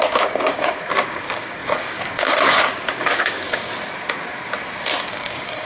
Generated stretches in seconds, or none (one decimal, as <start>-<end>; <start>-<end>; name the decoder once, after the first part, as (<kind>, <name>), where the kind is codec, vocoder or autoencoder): 0.0-3.7 (codec, DAC); 5.0-5.6